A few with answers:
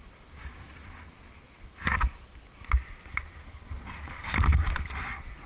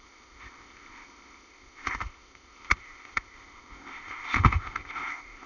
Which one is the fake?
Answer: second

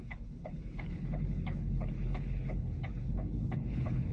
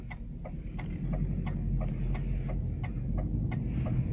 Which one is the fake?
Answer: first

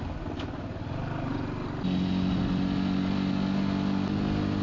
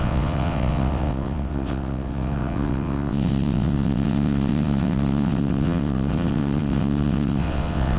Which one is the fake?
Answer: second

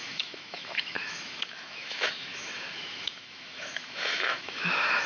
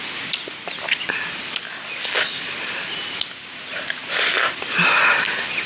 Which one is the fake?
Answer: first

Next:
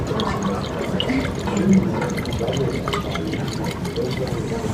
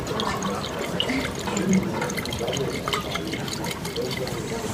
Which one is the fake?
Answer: second